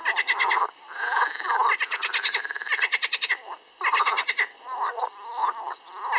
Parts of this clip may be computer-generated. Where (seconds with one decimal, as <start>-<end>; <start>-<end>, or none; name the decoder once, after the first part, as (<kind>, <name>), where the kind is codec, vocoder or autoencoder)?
none